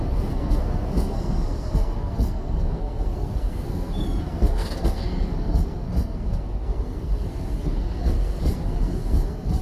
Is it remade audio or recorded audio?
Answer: remade